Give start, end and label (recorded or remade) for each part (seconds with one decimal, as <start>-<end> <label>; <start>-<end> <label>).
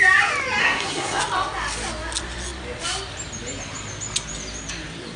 0.0-0.6 recorded; 0.6-1.2 remade; 1.2-5.2 recorded